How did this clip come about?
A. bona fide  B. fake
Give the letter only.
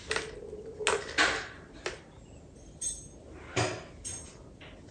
A